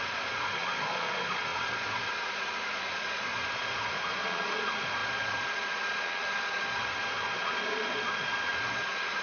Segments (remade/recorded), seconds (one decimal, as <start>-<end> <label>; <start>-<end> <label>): 0.0-9.2 remade